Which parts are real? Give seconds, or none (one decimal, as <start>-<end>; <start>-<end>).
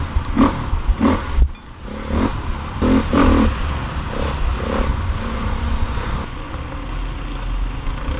0.0-4.9; 6.5-8.2